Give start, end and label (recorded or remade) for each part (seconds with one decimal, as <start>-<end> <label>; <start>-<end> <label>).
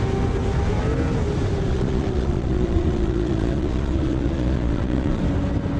0.0-1.7 recorded; 1.7-5.2 remade; 5.2-5.8 recorded